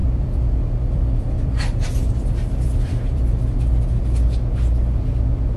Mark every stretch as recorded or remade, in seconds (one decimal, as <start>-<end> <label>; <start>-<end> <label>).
0.0-3.4 remade; 3.4-5.6 recorded